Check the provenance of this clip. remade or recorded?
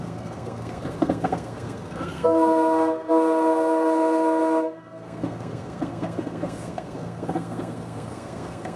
remade